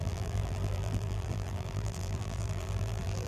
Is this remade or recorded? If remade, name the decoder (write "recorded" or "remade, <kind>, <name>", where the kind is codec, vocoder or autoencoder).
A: remade, vocoder, BigVGAN v2